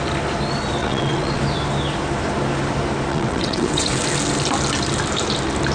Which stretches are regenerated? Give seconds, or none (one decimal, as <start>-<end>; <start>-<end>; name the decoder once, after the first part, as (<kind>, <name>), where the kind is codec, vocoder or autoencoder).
0.8-1.4 (vocoder, WaveNeXt); 3.1-4.0